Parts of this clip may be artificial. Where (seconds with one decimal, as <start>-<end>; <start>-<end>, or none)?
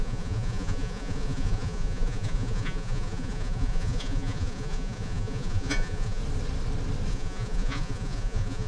0.0-6.2; 7.1-8.7